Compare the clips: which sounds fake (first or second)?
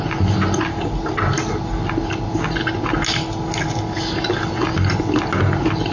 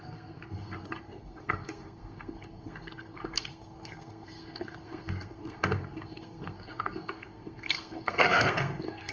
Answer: second